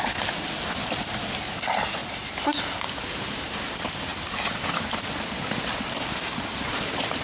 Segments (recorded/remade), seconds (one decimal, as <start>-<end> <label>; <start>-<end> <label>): 0.0-7.2 recorded